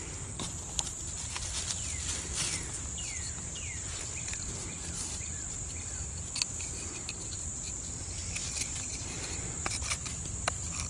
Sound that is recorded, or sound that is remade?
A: recorded